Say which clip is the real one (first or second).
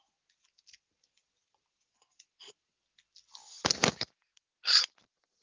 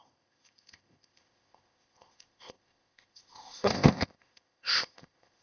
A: first